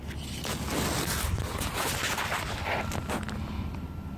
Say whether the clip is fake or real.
real